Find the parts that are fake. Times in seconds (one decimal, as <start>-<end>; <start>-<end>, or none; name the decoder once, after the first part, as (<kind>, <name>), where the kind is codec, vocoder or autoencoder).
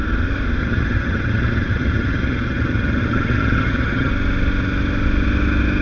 0.6-4.1 (vocoder, HiFi-GAN)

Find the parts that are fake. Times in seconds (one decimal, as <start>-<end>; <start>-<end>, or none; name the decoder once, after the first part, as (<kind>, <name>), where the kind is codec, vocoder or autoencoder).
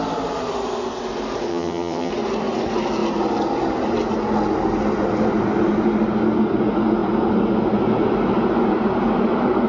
1.5-2.1 (vocoder, HiFi-GAN)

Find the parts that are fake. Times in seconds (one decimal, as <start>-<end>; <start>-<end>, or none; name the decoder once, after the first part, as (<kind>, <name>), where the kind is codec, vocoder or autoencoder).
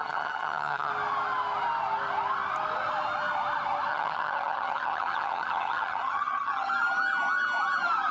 0.0-0.9 (vocoder, HiFi-GAN); 3.9-6.7